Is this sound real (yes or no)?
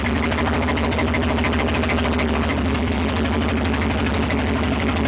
yes